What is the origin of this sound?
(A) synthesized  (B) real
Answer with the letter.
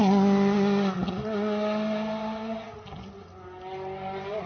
B